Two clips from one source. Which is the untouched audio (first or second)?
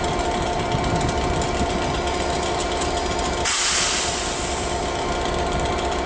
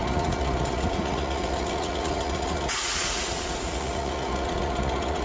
first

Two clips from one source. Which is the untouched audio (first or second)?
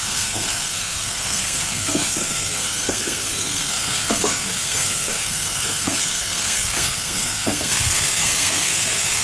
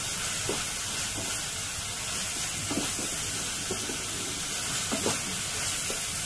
second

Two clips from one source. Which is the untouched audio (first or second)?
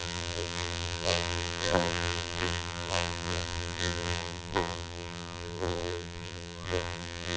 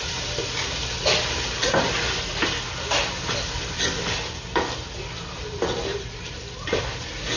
second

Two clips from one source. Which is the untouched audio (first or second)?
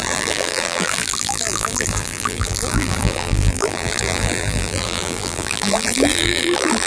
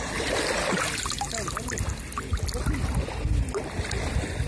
second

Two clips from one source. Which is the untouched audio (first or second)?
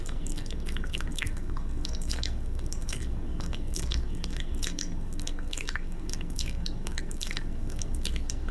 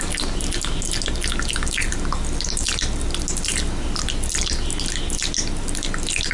second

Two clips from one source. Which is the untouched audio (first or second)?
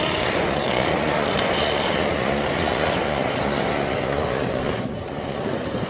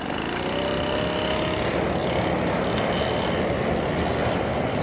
second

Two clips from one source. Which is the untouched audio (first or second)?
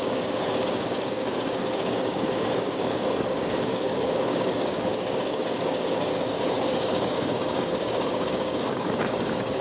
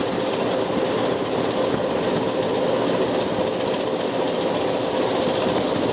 second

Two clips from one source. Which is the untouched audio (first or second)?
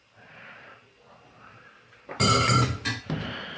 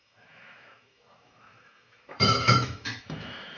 first